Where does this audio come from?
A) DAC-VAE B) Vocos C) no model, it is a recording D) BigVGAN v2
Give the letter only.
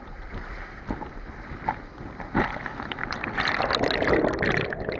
C